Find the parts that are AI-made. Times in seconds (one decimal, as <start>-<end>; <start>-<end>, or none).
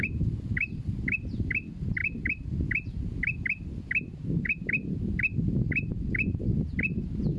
2.0-2.5